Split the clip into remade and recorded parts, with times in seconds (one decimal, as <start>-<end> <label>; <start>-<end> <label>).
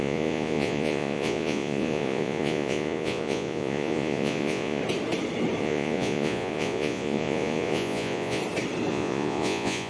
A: 0.0-4.8 remade; 4.8-5.6 recorded; 5.6-8.4 remade; 8.4-8.9 recorded; 8.9-9.9 remade